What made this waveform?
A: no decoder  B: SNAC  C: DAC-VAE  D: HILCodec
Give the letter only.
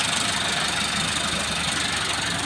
A